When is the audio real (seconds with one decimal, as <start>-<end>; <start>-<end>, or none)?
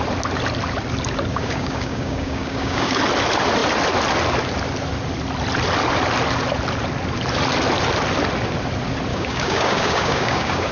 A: 0.0-1.3; 3.0-9.1